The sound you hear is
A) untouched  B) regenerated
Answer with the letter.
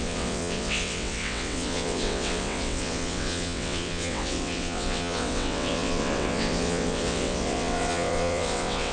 B